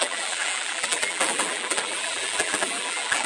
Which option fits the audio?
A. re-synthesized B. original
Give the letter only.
A